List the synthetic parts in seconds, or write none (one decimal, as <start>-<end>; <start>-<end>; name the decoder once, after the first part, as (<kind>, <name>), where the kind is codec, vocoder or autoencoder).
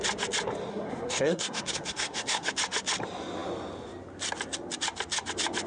0.7-2.5 (codec, SNAC)